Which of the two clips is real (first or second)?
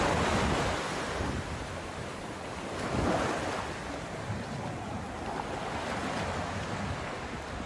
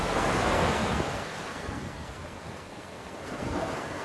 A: first